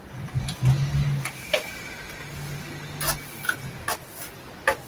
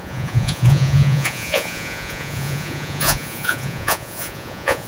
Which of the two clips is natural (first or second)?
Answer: first